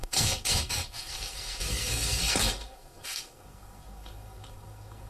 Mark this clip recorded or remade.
remade